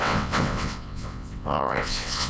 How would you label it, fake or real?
fake